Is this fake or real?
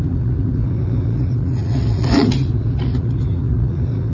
fake